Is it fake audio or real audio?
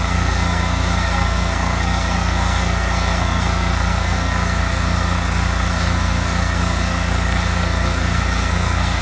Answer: fake